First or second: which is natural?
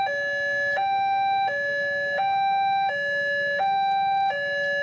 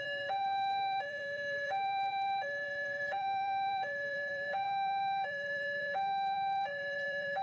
first